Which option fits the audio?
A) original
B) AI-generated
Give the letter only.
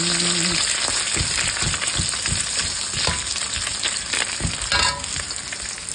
A